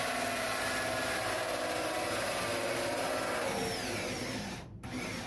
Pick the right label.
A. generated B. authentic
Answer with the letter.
B